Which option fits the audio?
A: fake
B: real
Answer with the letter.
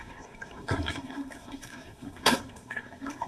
A